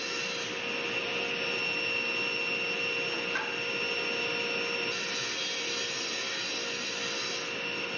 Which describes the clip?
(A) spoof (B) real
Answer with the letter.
B